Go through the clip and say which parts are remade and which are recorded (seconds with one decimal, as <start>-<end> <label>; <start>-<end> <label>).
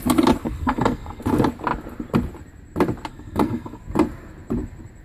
0.0-0.4 recorded; 0.4-1.2 remade; 1.2-3.1 recorded; 3.1-3.8 remade; 3.8-5.0 recorded